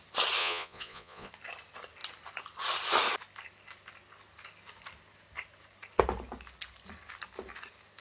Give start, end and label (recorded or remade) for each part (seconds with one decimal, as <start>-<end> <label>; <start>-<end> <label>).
0.0-0.4 recorded; 0.4-1.3 remade; 1.3-8.0 recorded